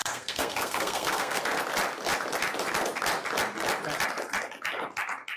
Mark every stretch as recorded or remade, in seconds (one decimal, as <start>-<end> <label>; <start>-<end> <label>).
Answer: 0.0-1.4 remade; 1.4-5.4 recorded